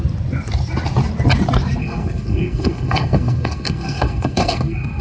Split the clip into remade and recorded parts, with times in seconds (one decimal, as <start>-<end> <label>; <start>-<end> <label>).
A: 0.0-1.8 recorded; 1.8-5.0 remade